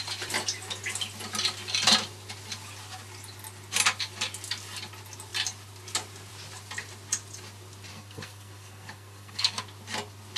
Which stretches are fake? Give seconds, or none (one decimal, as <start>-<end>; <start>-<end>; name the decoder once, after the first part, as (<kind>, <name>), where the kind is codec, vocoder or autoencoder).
7.9-9.6 (codec, SNAC)